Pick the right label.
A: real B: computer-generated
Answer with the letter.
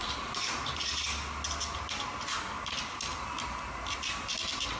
A